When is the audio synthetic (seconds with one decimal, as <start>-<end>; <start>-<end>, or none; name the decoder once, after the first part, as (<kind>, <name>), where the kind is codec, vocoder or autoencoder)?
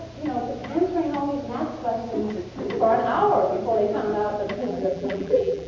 4.6-5.7 (vocoder, BigVGAN v2)